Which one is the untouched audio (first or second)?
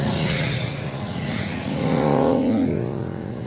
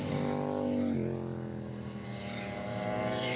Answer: second